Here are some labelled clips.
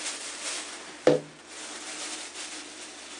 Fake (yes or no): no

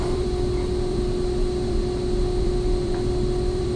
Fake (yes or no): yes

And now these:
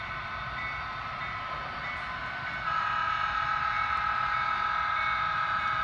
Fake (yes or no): no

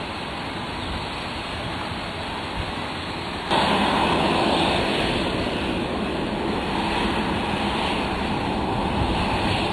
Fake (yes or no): no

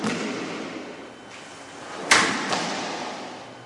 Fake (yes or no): no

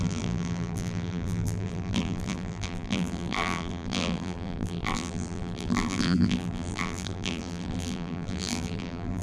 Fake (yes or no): yes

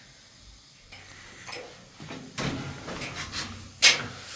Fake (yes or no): no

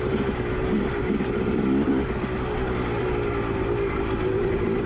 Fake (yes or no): no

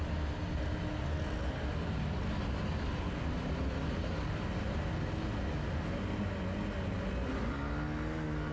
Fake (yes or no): no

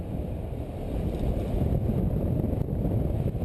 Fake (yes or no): yes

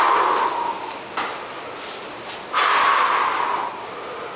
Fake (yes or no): no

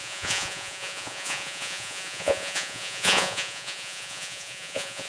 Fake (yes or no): yes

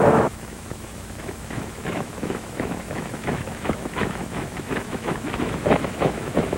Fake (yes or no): yes